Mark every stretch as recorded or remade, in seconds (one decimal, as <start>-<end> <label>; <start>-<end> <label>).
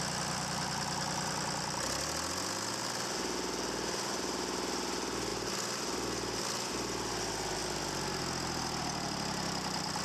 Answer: 0.0-10.0 recorded